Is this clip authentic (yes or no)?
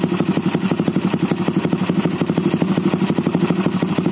yes